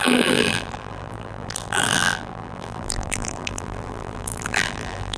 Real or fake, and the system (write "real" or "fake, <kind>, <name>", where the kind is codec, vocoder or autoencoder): fake, vocoder, BigVGAN v2